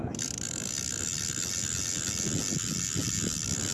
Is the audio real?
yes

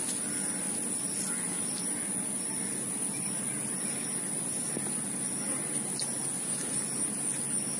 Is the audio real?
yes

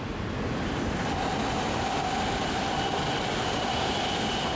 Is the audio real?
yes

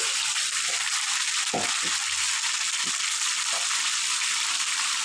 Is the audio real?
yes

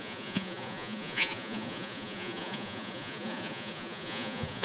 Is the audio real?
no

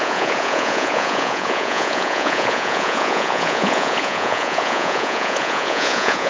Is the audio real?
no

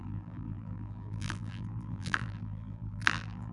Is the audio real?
no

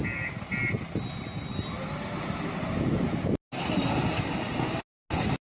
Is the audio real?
yes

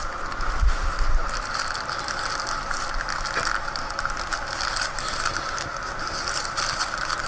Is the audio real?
yes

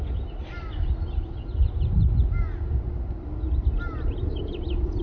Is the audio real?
yes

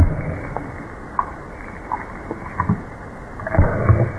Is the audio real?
yes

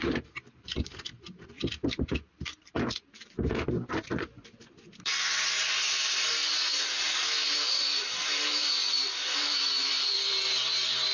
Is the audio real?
no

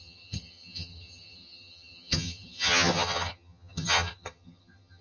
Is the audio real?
no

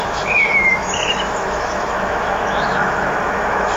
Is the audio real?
no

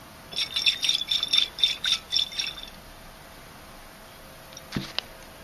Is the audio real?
yes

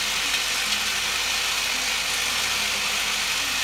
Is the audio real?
yes